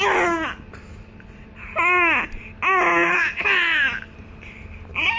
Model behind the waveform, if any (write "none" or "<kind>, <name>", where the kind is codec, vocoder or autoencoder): none